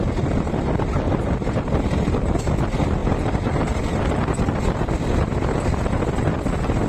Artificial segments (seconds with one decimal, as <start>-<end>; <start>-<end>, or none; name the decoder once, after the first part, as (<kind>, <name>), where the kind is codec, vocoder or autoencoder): none